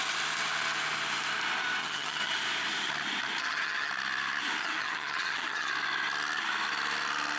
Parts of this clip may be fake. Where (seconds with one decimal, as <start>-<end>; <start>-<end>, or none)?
1.8-2.3; 3.4-3.9; 4.6-5.7